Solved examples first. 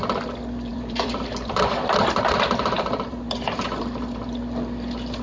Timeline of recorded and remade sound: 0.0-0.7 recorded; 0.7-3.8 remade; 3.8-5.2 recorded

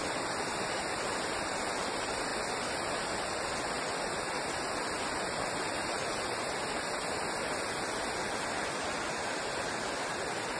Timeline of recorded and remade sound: 0.0-10.6 recorded

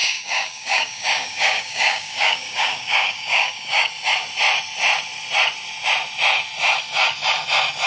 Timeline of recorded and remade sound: 0.0-3.9 remade; 3.9-7.9 recorded

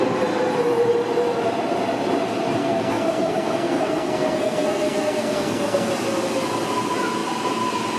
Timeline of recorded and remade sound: 0.0-2.6 recorded; 2.6-5.9 remade; 5.9-8.0 recorded

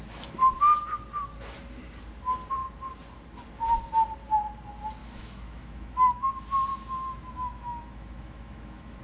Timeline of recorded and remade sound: 0.0-5.0 recorded; 5.0-6.3 remade; 6.3-6.7 recorded; 6.7-9.0 remade

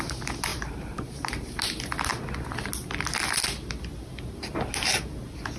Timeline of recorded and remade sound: 0.0-0.5 recorded; 0.5-1.6 remade; 1.6-5.6 recorded

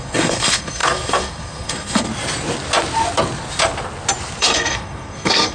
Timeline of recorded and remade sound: 0.0-2.1 remade; 2.1-4.4 recorded; 4.4-5.5 remade

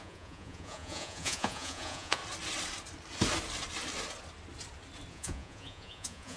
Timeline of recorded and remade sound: 0.0-2.2 remade; 2.2-5.1 recorded; 5.1-6.4 remade